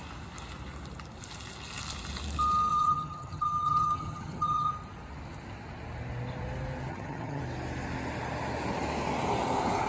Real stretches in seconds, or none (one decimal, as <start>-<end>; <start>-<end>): 0.0-2.7; 4.7-6.9; 7.4-9.9

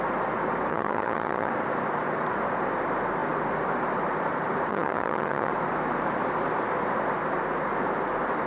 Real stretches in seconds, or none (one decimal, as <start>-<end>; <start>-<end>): 0.0-0.7; 1.5-4.7; 5.5-8.5

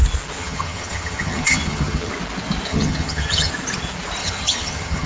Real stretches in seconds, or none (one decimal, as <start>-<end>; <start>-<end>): 0.0-0.4; 2.1-2.7; 3.5-4.2

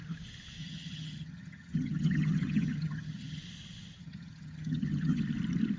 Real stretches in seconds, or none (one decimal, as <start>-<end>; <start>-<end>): 0.0-0.6; 3.4-4.0; 5.2-5.8